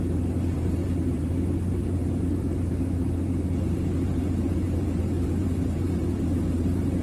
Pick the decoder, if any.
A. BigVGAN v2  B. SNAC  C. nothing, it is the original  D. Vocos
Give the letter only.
A